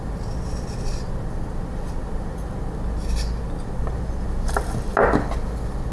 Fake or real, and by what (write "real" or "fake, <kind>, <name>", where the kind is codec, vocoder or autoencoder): real